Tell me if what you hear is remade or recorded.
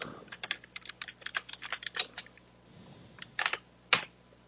recorded